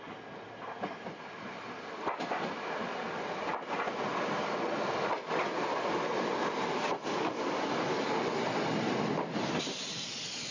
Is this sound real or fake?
real